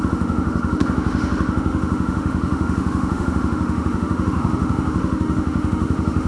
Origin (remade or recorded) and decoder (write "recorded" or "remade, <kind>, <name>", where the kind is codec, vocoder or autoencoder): remade, autoencoder, DAC-VAE